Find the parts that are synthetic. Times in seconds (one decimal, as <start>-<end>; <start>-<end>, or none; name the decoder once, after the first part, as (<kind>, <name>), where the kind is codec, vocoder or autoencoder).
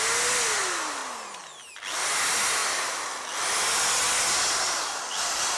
none